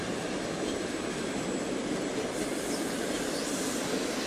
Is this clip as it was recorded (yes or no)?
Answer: yes